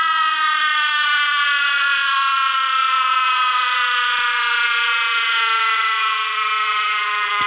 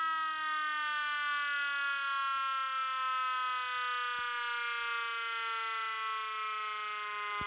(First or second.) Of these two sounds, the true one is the second